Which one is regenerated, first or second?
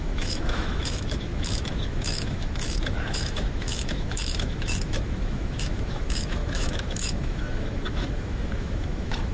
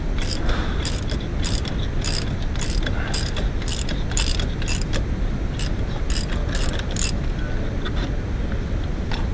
first